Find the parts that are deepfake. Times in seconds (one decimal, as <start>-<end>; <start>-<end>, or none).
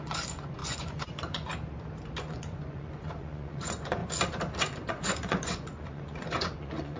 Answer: 0.0-1.5; 2.2-4.0; 4.6-7.0